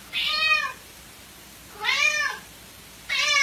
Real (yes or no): no